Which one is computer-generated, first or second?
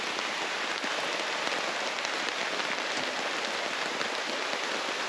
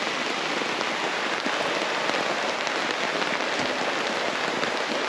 first